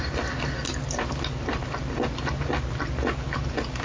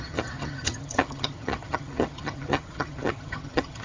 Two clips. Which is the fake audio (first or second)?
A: second